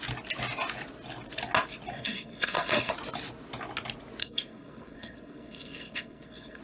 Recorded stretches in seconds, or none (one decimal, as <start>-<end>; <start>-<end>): 0.0-1.9; 2.9-4.2